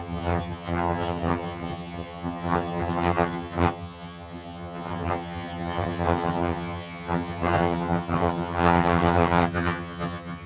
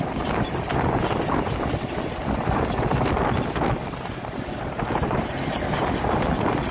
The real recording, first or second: second